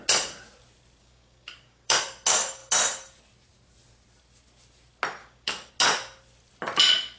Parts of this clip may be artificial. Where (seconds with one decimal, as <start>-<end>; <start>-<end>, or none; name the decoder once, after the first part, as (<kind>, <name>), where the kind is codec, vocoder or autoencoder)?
1.0-2.0 (codec, DAC); 5.2-5.7